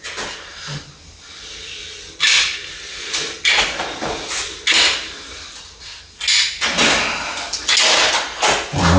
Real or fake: real